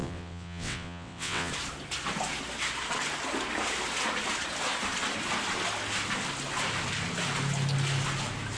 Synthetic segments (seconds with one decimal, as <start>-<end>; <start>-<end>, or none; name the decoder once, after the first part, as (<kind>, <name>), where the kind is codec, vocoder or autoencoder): 0.0-1.5 (vocoder, WaveNeXt)